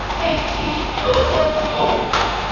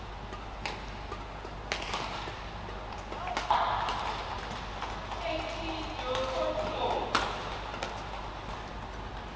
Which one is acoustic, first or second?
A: second